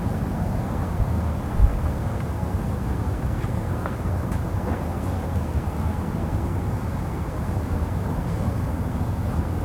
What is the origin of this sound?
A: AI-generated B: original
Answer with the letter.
A